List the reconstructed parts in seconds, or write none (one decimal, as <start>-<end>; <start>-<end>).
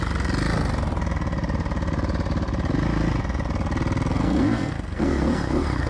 4.1-5.9